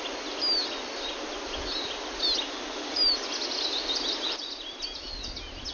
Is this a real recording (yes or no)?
yes